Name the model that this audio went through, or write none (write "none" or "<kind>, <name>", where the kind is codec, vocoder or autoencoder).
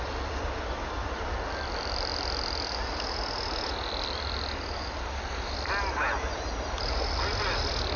none